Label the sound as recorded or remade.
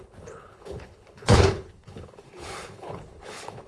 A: remade